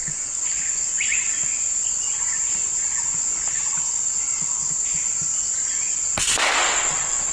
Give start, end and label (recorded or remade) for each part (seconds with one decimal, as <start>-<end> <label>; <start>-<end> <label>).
0.0-7.3 recorded